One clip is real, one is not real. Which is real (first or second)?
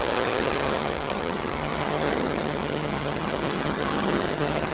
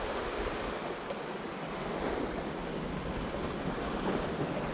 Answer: second